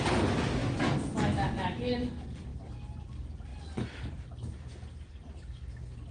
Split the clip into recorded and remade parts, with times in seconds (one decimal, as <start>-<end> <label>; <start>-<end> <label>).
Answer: 0.0-0.6 recorded; 0.6-1.9 remade; 1.9-6.1 recorded